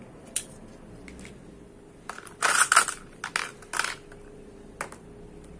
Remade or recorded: recorded